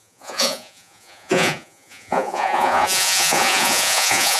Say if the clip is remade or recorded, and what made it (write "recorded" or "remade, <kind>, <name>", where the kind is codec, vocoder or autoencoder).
remade, vocoder, Vocos